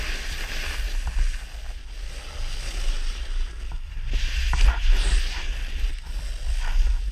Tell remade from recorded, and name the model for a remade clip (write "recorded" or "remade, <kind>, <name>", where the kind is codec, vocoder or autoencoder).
recorded